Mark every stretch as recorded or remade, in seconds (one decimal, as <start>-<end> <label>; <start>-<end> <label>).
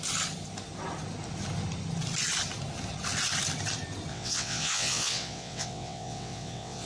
0.0-4.1 recorded; 4.1-6.9 remade